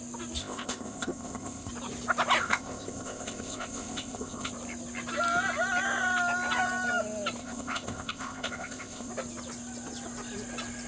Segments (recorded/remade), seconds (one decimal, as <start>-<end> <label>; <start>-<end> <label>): 0.0-0.4 recorded; 0.4-1.7 remade; 1.7-2.4 recorded; 2.4-4.5 remade; 4.5-7.4 recorded; 7.4-9.1 remade; 9.1-10.9 recorded